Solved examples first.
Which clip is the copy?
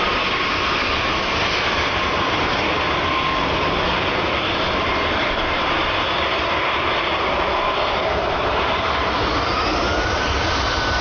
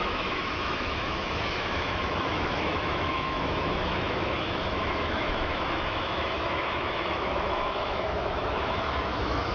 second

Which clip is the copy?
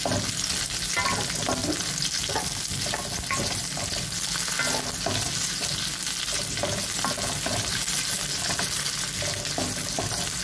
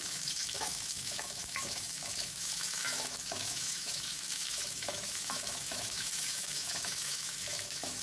second